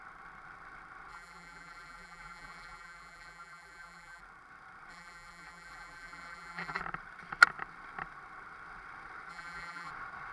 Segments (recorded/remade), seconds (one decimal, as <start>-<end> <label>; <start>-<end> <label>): 0.0-1.1 recorded; 1.1-4.2 remade; 4.2-4.9 recorded; 4.9-6.8 remade; 6.8-9.3 recorded; 9.3-9.9 remade; 9.9-10.3 recorded